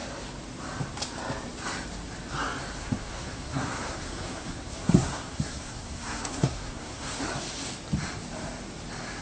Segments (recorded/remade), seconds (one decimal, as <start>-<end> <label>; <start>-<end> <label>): 0.0-2.8 recorded; 2.8-7.2 remade; 7.2-9.2 recorded